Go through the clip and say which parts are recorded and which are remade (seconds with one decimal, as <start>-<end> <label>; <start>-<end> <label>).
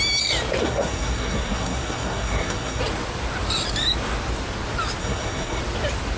0.0-0.6 recorded; 0.6-2.8 remade; 2.8-5.0 recorded; 5.0-5.6 remade; 5.6-6.2 recorded